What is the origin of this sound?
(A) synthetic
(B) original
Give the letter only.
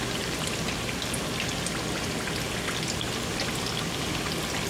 B